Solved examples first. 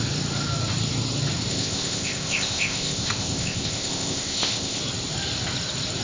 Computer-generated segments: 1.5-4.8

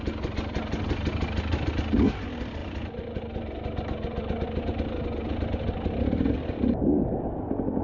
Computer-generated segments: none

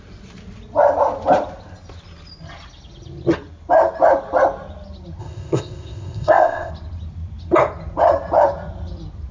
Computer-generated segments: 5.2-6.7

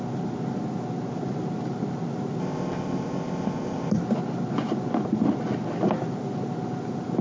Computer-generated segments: 2.4-3.9

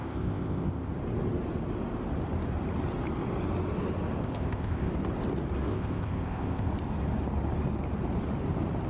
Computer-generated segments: 0.0-0.9; 4.2-4.9; 5.7-6.7

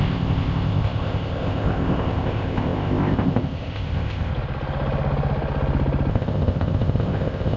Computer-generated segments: 0.0-4.3; 6.1-7.6

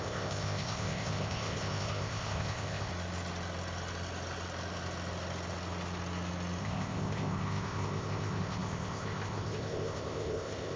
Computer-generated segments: 0.0-2.9; 6.6-10.8

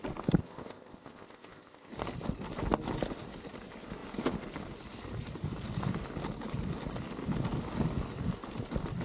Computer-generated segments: 0.4-1.9